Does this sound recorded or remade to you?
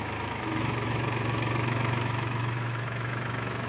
remade